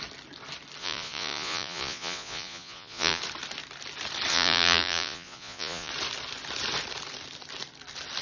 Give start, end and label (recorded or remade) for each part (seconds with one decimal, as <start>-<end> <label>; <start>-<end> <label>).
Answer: 0.0-0.8 recorded; 0.8-3.2 remade; 3.2-4.3 recorded; 4.3-5.9 remade; 5.9-8.2 recorded